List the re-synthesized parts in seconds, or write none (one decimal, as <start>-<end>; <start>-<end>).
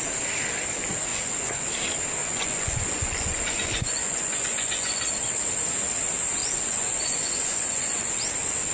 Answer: 1.1-1.7; 2.2-5.0; 6.4-8.1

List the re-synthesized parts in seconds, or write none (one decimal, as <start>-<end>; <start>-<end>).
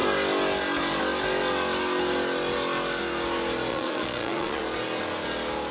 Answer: 3.7-4.6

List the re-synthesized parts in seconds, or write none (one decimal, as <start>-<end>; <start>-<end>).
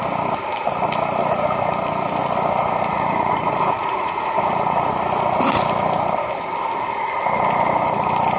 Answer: 2.9-4.9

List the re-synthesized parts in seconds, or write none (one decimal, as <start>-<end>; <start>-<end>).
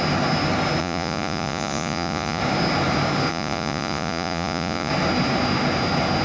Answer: 0.8-2.4; 3.3-4.9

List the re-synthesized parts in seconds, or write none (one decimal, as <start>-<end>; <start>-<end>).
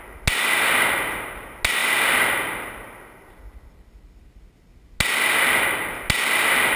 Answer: none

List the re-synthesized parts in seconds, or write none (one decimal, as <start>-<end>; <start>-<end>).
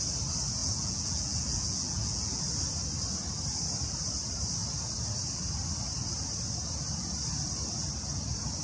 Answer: 0.6-2.4